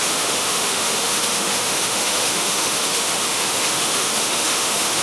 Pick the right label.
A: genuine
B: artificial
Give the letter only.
B